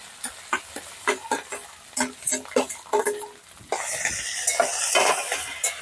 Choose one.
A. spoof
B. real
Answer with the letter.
B